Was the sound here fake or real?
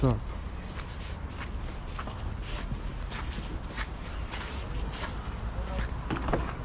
real